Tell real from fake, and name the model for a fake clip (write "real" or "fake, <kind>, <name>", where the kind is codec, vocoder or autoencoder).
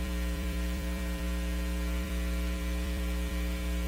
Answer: fake, vocoder, BigVGAN v2